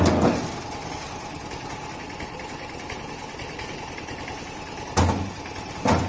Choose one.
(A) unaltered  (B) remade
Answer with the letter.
A